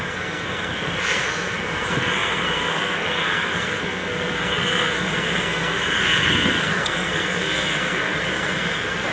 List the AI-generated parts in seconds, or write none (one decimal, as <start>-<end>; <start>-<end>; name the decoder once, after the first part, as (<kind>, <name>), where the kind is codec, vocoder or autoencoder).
0.0-9.1 (codec, SNAC)

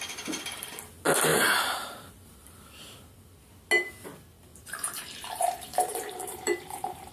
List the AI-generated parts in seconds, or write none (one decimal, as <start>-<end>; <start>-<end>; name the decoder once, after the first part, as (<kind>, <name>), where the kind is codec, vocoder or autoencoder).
1.3-2.1 (vocoder, BigVGAN v2); 4.5-7.1

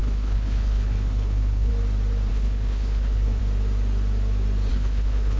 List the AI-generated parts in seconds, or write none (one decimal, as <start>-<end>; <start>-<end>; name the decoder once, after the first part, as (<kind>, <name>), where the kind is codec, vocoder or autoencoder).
0.0-1.7 (codec, HILCodec); 2.3-3.4; 4.7-5.4

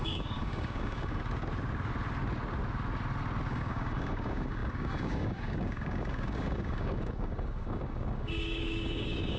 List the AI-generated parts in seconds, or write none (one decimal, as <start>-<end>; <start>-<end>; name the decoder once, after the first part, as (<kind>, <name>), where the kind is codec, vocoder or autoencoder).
0.0-1.2 (codec, DAC); 3.5-9.4

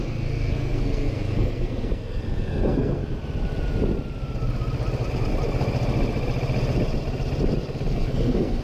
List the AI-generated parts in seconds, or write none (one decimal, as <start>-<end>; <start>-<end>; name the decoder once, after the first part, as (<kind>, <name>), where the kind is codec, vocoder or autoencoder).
0.0-3.0 (codec, SNAC); 7.9-8.6

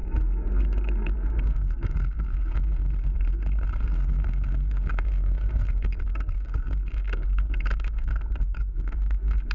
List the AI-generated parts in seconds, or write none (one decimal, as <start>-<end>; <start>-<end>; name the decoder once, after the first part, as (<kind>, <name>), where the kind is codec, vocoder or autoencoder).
0.0-9.5 (codec, SNAC)